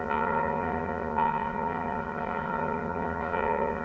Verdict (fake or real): fake